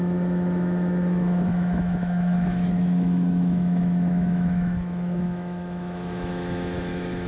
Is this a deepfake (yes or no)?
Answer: yes